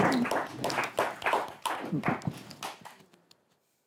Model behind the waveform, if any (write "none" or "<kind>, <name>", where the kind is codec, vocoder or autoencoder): none